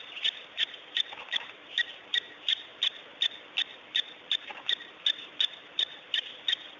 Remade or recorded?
remade